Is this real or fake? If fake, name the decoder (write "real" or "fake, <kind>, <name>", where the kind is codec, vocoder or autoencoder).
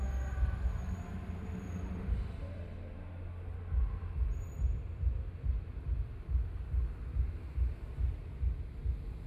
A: real